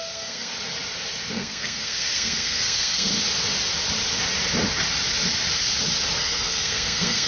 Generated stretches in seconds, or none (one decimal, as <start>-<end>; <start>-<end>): 0.0-0.5; 1.3-3.1; 6.2-7.3